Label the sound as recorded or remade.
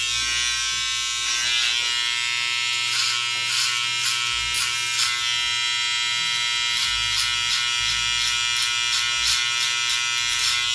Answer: recorded